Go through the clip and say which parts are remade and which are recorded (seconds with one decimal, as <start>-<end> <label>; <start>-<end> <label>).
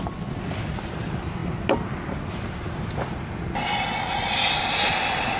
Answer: 0.0-5.4 recorded